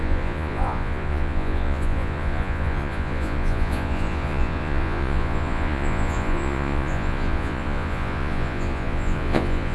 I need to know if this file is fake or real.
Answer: fake